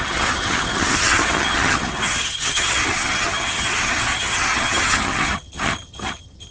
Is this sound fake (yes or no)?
yes